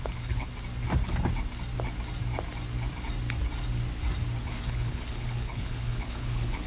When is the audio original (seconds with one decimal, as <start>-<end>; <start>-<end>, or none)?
0.5-4.4